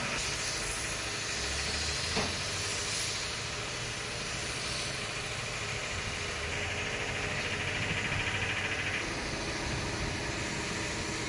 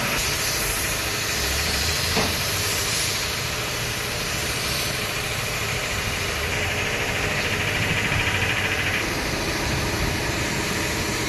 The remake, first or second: second